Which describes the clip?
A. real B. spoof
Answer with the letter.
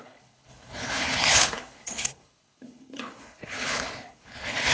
B